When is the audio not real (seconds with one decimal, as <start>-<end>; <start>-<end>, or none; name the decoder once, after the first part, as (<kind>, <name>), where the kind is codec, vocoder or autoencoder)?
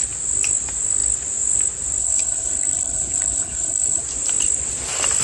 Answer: 2.0-4.0 (codec, HILCodec)